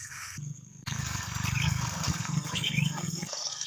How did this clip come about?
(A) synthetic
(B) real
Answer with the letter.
A